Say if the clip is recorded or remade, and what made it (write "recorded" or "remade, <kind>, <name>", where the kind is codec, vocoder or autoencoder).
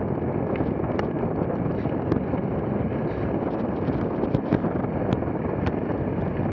recorded